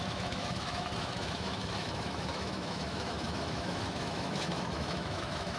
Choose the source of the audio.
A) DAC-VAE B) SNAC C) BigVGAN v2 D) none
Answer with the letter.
A